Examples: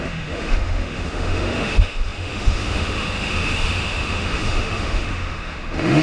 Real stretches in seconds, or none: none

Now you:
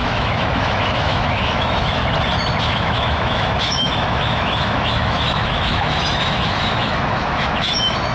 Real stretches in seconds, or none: 2.0-2.6

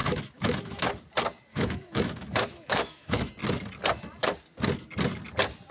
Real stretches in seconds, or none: 0.9-1.5; 3.3-5.7